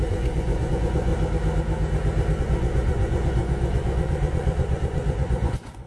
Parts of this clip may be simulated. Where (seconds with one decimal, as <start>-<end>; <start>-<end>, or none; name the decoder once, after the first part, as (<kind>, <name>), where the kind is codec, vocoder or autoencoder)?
0.0-1.1 (vocoder, Vocos); 2.4-5.9